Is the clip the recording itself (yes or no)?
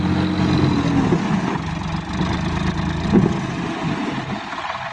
yes